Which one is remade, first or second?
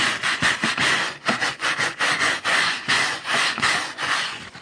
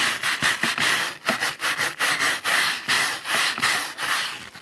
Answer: first